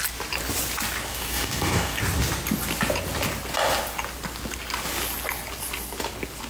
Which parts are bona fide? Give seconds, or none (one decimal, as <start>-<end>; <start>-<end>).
0.0-1.1; 2.0-6.5